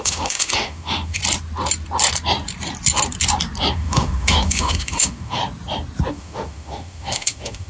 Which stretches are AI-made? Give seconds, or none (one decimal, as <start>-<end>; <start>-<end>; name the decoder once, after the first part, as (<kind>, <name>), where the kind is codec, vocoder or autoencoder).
0.0-1.2 (autoencoder, DAC-VAE); 3.7-5.4; 6.1-7.7